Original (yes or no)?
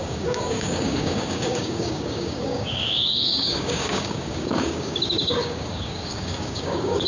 no